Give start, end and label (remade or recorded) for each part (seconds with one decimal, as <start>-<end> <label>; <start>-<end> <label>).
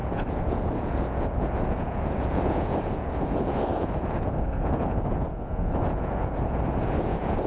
0.0-7.5 remade